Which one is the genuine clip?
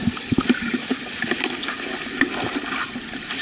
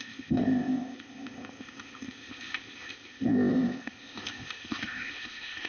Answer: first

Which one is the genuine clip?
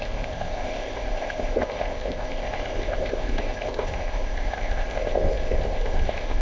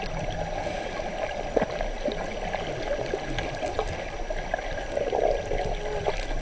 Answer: second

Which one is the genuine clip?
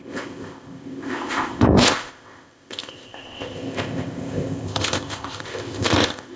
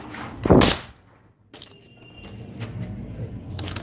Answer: second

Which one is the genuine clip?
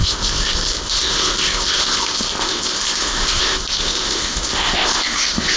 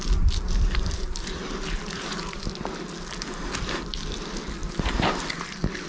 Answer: second